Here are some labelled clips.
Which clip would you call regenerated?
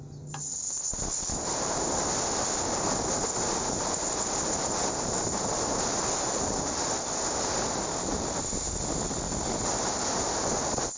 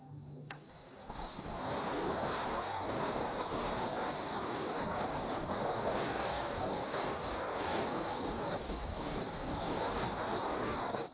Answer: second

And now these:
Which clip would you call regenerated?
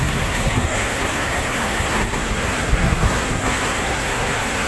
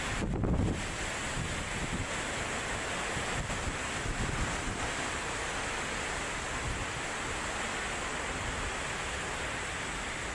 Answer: first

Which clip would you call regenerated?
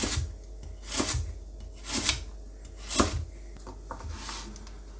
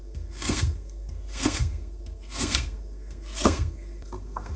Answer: second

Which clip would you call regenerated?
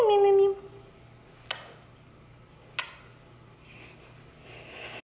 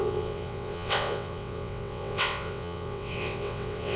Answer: second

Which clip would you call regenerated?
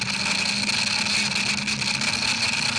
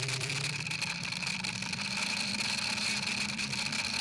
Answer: second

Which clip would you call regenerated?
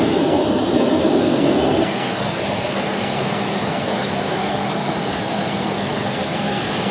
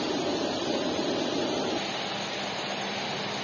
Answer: first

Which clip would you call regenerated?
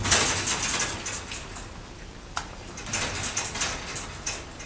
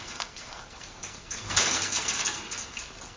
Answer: second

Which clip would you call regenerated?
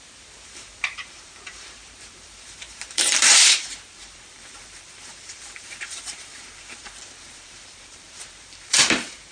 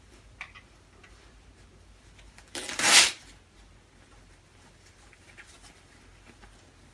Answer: first